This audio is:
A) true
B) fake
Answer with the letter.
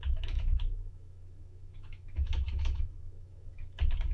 B